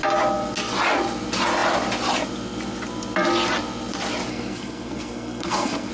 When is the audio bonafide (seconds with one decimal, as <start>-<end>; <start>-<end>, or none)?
0.0-4.3